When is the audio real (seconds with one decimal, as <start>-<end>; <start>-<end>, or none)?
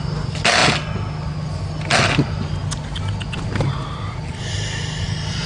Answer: 0.0-5.5